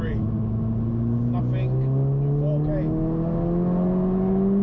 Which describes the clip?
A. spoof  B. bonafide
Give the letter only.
B